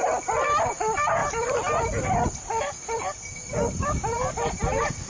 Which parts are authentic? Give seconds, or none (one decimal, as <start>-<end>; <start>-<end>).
0.0-5.1